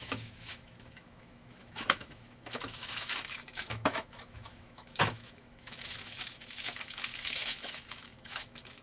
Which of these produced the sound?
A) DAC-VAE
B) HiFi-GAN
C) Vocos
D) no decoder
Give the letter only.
A